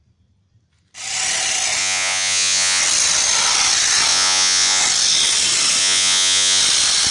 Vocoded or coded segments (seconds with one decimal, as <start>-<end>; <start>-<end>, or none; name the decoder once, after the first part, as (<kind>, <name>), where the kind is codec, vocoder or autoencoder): 1.8-2.8 (vocoder, Vocos); 4.1-4.8; 5.8-6.6